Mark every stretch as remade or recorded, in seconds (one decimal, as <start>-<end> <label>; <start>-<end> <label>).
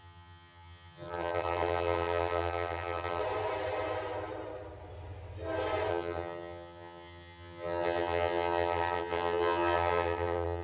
0.0-3.2 remade; 3.2-5.9 recorded; 5.9-10.6 remade